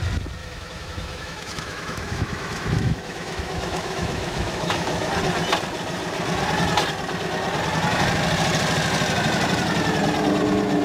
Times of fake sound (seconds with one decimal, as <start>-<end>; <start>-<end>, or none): 0.4-5.1